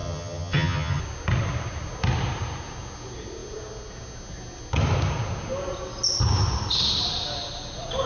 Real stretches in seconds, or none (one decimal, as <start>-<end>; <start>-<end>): 1.0-8.1